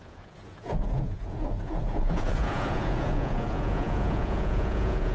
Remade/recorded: remade